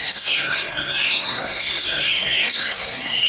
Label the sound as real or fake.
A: fake